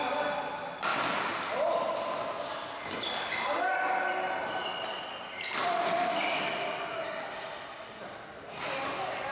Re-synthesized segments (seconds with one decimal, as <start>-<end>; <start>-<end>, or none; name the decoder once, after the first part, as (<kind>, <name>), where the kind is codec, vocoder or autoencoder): none